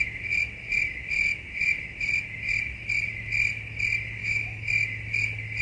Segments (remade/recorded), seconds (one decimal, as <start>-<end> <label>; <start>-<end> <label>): 0.0-4.2 recorded; 4.2-4.7 remade; 4.7-5.6 recorded